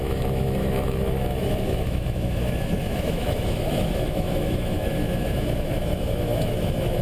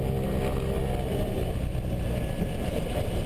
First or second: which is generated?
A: first